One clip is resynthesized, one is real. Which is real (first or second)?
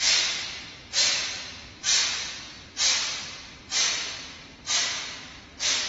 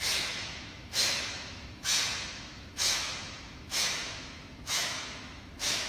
first